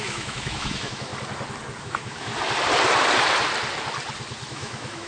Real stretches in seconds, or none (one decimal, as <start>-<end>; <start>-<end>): 1.1-1.8; 2.3-4.5